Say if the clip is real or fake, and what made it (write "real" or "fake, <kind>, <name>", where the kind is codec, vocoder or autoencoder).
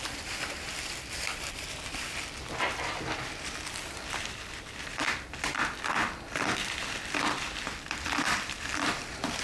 fake, vocoder, BigVGAN v2